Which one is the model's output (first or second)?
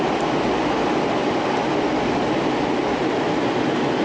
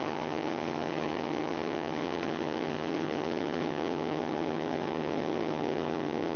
second